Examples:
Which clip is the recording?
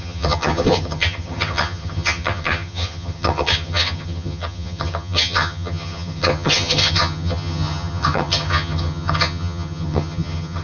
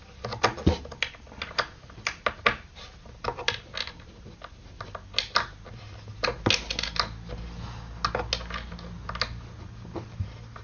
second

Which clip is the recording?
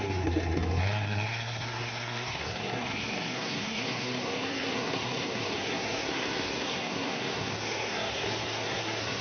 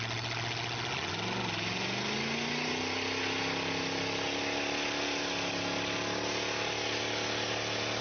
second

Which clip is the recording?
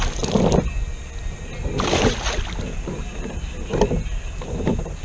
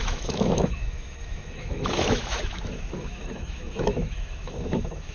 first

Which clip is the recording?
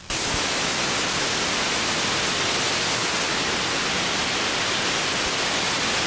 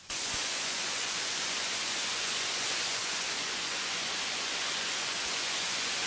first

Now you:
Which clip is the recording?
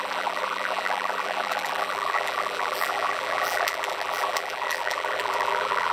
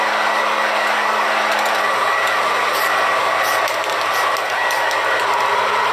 second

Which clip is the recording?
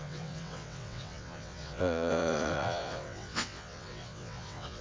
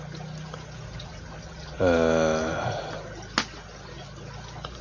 second